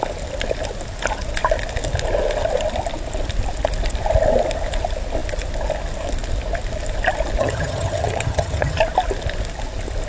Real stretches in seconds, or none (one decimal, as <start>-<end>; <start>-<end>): 0.0-7.4; 8.8-10.1